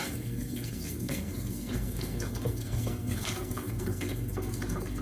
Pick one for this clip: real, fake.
fake